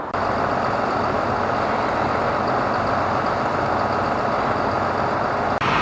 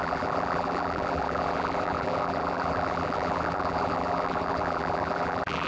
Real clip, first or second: first